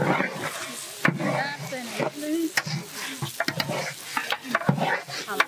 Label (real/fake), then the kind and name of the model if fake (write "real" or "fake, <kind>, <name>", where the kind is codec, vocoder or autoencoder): real